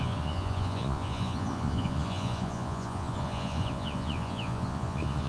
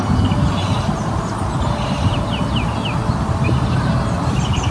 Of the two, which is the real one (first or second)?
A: second